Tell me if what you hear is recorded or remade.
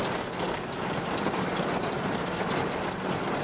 remade